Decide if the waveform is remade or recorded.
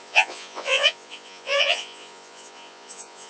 remade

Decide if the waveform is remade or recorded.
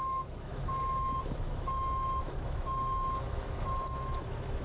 remade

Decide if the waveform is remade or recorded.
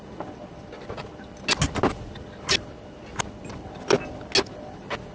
recorded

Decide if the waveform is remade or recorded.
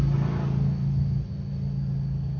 recorded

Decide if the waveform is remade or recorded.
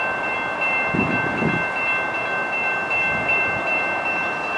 recorded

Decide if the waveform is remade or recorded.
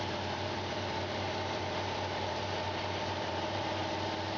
remade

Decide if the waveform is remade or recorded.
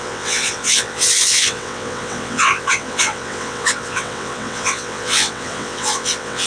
remade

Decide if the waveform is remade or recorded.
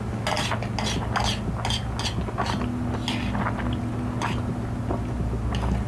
recorded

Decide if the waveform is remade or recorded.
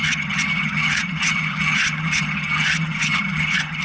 remade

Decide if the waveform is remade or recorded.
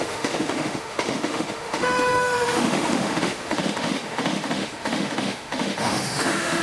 remade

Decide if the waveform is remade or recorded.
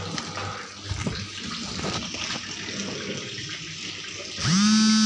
recorded